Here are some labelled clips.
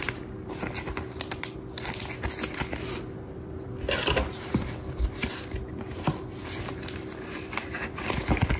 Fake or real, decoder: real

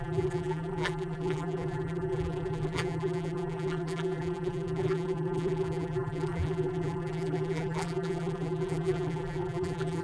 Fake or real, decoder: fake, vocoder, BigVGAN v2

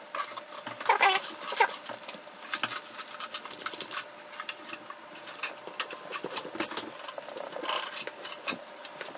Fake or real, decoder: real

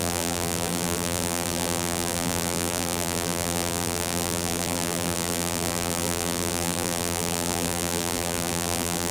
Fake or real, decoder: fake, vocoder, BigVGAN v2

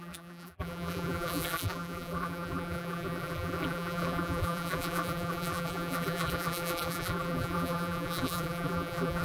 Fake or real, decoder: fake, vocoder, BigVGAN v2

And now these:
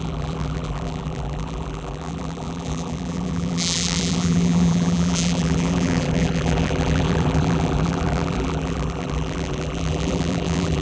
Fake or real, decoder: fake, vocoder, BigVGAN v2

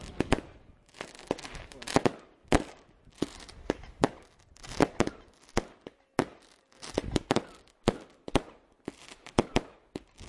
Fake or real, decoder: real